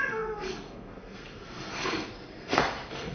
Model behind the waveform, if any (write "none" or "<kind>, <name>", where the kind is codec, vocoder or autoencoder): codec, SNAC